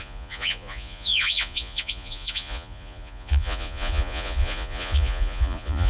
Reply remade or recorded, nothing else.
remade